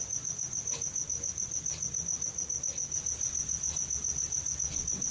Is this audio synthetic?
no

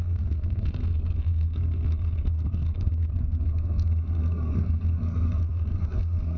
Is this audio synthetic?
yes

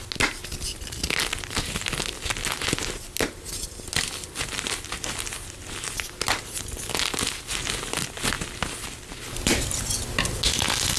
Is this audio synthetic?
no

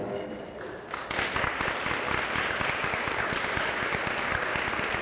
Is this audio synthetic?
no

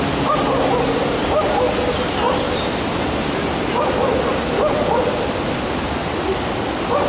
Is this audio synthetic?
no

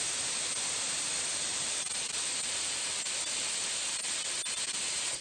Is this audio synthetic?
no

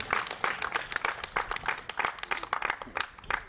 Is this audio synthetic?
no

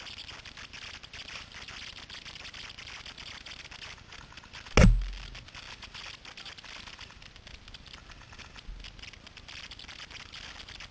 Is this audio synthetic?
no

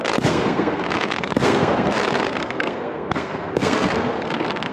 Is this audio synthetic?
yes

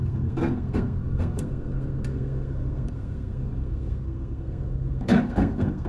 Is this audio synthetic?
yes